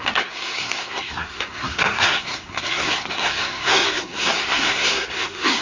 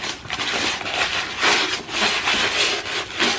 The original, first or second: second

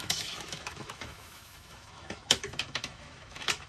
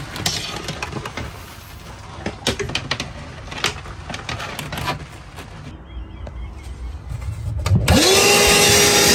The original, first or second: second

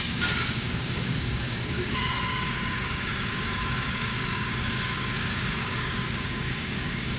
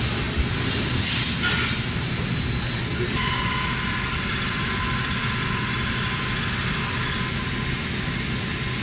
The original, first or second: second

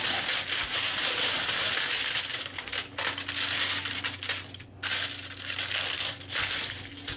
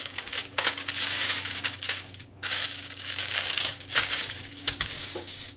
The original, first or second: first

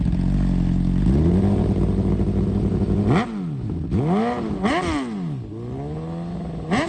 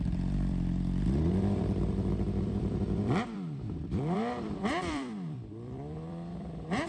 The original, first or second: first